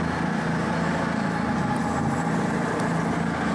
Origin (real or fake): real